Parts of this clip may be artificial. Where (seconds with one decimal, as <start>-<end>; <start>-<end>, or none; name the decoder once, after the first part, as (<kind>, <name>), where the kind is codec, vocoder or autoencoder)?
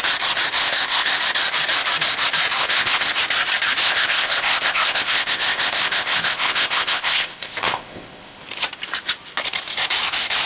0.6-1.2 (codec, ZipCodec); 2.6-3.1; 3.8-8.4